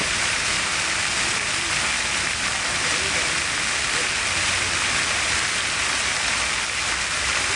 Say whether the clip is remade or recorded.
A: recorded